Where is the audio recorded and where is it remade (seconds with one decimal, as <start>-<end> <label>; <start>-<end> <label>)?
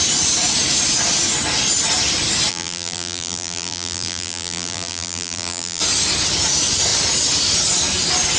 0.0-2.5 recorded; 2.5-5.8 remade; 5.8-8.4 recorded